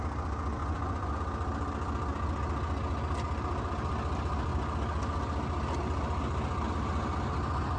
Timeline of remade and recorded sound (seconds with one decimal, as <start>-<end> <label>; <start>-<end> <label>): 0.0-0.6 recorded; 0.6-1.2 remade; 1.2-7.8 recorded